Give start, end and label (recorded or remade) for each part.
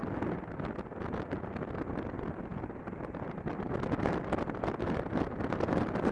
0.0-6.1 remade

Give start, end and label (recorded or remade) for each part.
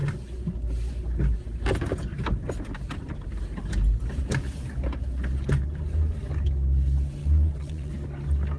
0.0-7.2 recorded; 7.2-7.9 remade; 7.9-8.6 recorded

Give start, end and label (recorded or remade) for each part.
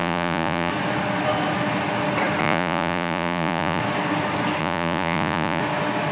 0.0-0.7 remade; 0.7-2.4 recorded; 2.4-3.8 remade; 3.8-4.6 recorded; 4.6-5.6 remade; 5.6-6.1 recorded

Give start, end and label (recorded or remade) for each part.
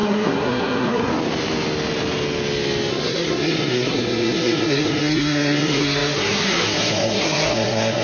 0.0-1.1 remade; 1.1-2.9 recorded; 2.9-8.0 remade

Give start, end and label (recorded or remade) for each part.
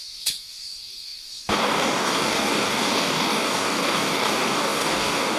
0.0-5.4 remade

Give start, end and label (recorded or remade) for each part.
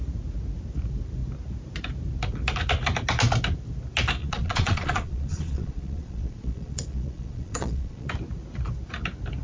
0.0-4.2 recorded; 4.2-8.1 remade; 8.1-9.4 recorded